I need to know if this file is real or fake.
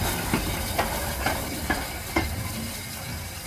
real